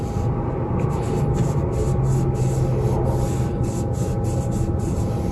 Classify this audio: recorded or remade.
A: recorded